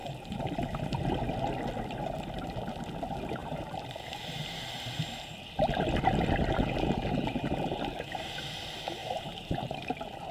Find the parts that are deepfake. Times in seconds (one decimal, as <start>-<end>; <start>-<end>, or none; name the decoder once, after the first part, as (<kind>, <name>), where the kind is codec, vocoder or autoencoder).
0.0-1.1 (vocoder, BigVGAN v2); 3.4-5.2; 9.0-9.9